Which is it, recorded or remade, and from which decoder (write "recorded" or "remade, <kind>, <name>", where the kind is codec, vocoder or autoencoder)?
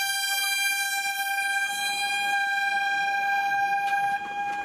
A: recorded